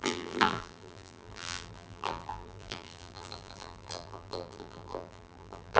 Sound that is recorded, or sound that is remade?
remade